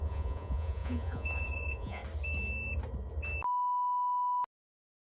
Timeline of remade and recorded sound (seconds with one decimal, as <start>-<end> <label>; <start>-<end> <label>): 0.0-2.0 remade; 2.0-5.0 recorded